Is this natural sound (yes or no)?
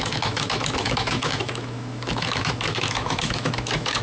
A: no